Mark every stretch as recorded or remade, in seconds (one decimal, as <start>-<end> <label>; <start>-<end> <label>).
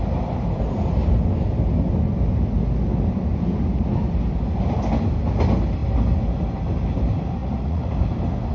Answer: 0.0-7.4 recorded; 7.4-7.9 remade; 7.9-8.5 recorded